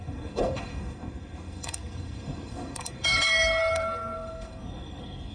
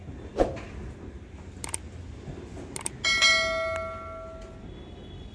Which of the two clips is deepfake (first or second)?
first